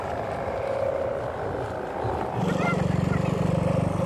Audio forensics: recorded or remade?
recorded